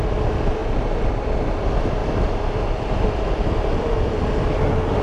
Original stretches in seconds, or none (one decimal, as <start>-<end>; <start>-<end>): 0.0-2.0; 4.2-5.0

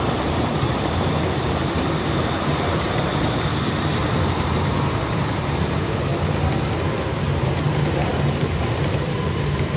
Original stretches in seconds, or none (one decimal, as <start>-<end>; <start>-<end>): 6.1-7.2

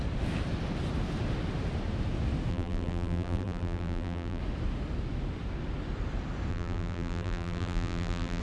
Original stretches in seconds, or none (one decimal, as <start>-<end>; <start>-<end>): 0.0-2.5; 4.4-6.5

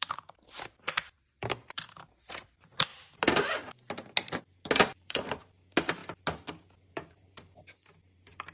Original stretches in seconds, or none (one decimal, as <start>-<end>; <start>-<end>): 2.9-4.4; 6.0-6.9